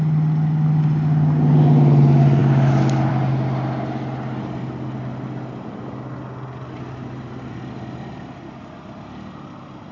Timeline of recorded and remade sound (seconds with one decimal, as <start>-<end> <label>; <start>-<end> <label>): 0.0-9.9 recorded